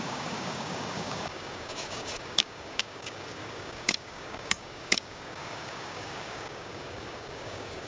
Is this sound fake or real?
fake